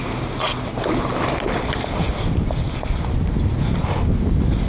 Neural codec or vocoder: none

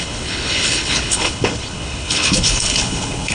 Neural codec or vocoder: codec, HILCodec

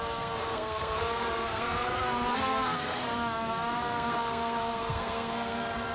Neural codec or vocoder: codec, SNAC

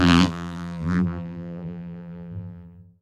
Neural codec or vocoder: vocoder, BigVGAN v2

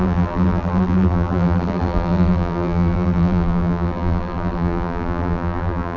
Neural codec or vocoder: vocoder, BigVGAN v2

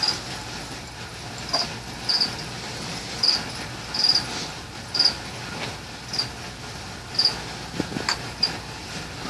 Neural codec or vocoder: none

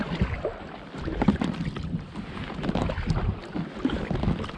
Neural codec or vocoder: none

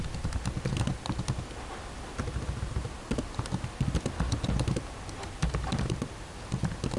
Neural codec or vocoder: none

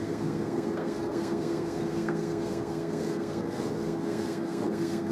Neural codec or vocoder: codec, SNAC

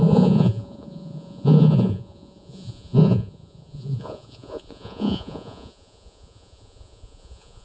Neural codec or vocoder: vocoder, Vocos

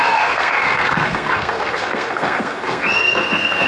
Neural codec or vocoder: codec, SNAC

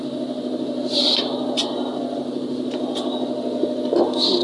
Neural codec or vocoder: none